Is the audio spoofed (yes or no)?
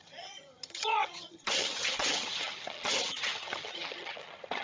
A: yes